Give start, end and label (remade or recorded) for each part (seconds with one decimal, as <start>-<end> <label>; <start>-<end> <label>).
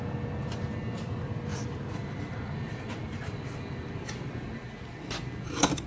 0.0-1.5 recorded; 1.5-4.8 remade; 4.8-5.9 recorded